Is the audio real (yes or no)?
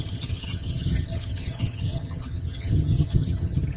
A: no